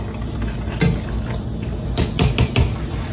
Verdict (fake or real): real